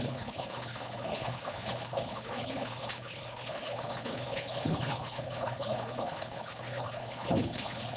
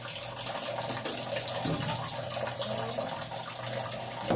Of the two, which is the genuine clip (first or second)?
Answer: second